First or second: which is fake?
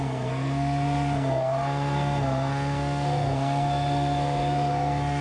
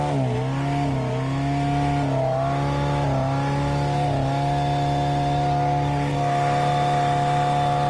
first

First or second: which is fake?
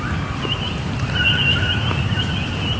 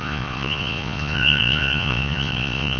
second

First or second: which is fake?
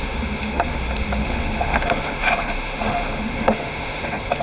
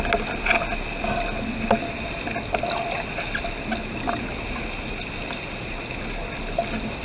first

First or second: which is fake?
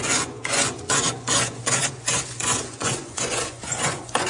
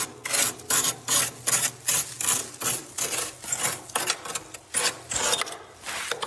first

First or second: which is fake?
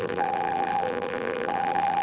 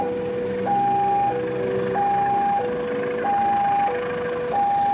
first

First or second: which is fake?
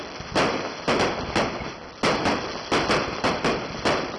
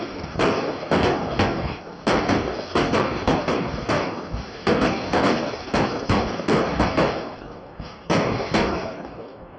second